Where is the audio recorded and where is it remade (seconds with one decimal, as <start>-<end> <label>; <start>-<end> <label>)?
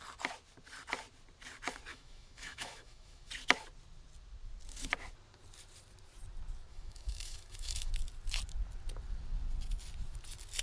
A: 0.0-1.9 recorded; 1.9-3.3 remade; 3.3-6.7 recorded; 6.7-7.9 remade; 7.9-10.6 recorded